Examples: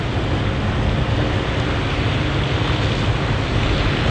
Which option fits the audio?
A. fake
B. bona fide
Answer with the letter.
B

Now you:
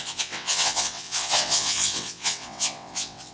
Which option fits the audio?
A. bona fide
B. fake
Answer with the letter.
B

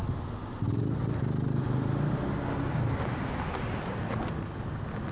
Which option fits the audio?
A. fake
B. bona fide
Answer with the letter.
B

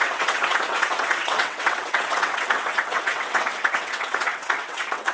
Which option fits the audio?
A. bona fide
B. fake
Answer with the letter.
B